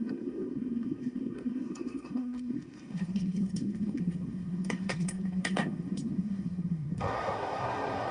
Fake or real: fake